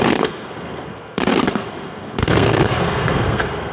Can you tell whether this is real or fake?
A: fake